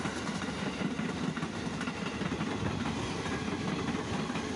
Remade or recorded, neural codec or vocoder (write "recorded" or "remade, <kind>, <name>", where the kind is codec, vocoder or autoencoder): recorded